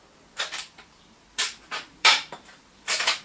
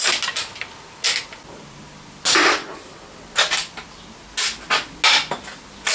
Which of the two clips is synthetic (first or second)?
first